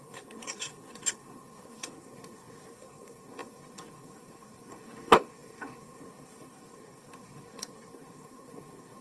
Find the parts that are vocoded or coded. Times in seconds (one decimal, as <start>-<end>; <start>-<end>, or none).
0.0-9.0